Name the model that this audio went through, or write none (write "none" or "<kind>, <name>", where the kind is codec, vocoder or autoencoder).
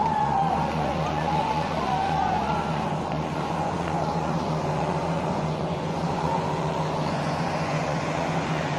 vocoder, Vocos